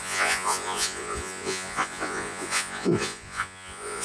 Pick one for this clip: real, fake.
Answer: fake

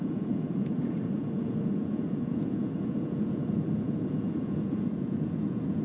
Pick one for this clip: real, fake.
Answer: fake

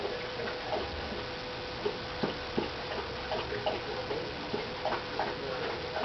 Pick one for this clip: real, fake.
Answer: real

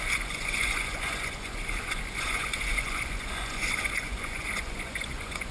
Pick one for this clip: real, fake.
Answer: fake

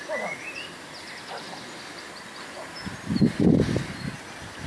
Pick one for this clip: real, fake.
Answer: real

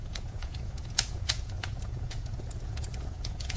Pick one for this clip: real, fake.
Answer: fake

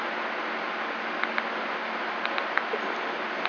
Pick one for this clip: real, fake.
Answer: real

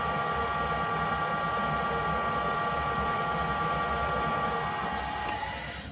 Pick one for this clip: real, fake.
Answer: real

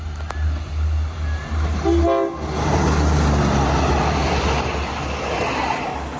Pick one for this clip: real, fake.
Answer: real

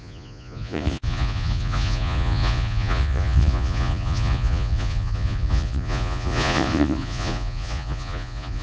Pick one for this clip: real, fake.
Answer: fake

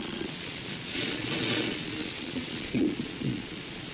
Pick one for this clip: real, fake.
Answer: fake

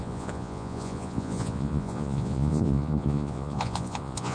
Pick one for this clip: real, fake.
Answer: fake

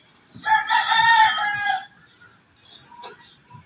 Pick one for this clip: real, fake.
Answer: real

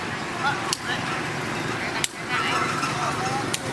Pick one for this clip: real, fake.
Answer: real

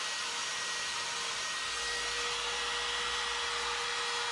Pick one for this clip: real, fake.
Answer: real